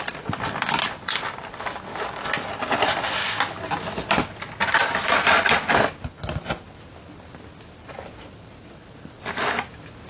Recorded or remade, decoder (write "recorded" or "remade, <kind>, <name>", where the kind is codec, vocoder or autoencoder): recorded